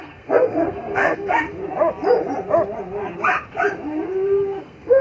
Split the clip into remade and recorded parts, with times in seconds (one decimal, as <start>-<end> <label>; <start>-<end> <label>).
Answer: 0.0-1.6 remade; 1.6-4.6 recorded; 4.6-5.0 remade